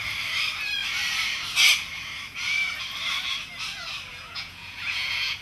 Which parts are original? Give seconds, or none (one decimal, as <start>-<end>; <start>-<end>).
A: 0.0-4.1